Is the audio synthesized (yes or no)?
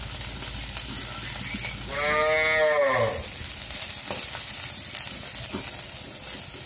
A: no